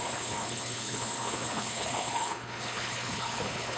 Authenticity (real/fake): fake